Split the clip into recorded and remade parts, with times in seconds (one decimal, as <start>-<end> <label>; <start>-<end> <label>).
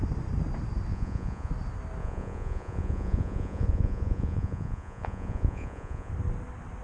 0.0-0.9 recorded; 0.9-1.5 remade; 1.5-2.0 recorded; 2.0-6.1 remade; 6.1-6.8 recorded